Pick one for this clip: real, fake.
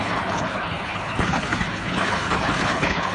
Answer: fake